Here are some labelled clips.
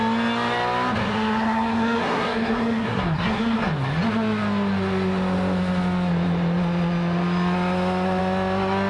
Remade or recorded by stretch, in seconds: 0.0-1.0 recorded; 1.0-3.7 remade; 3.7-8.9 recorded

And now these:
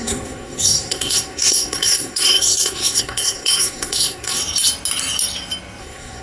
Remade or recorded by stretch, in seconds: 0.0-4.4 remade; 4.4-5.8 recorded; 5.8-6.2 remade

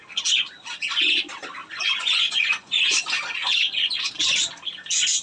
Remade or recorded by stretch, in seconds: 0.0-1.6 recorded; 1.6-3.0 remade; 3.0-3.4 recorded; 3.4-4.1 remade; 4.1-5.2 recorded